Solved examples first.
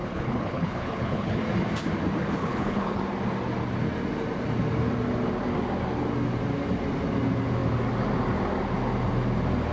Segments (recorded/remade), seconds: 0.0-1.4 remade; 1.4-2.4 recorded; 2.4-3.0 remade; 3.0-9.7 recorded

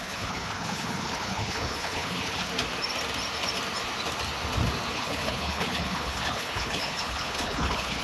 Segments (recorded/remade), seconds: 0.0-2.5 remade; 2.5-4.9 recorded; 4.9-8.0 remade

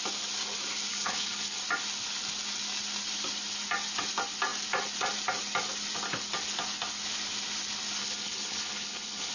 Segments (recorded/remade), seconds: 0.0-0.9 recorded; 0.9-1.6 remade; 1.6-8.0 recorded; 8.0-9.3 remade

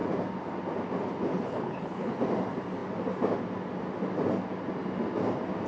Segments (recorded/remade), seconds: 0.0-1.3 recorded; 1.3-2.1 remade; 2.1-5.7 recorded

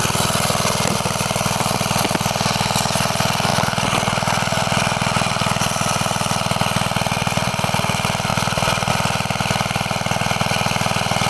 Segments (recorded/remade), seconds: 0.0-11.3 recorded

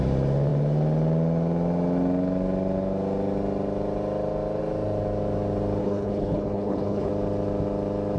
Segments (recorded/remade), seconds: 0.0-5.8 recorded; 5.8-7.1 remade; 7.1-8.2 recorded

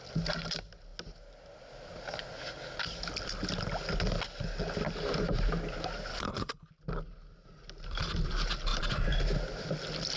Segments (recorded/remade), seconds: 0.0-6.1 recorded; 6.1-6.7 remade; 6.7-10.2 recorded

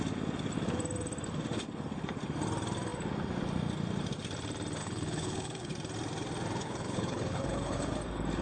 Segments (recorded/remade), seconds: 0.0-4.8 recorded; 4.8-5.7 remade; 5.7-6.6 recorded; 6.6-7.9 remade; 7.9-8.4 recorded